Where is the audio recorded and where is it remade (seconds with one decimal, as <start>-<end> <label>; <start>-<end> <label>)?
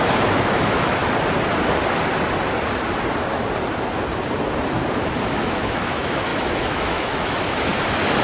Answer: 0.0-1.0 remade; 1.0-5.2 recorded; 5.2-8.2 remade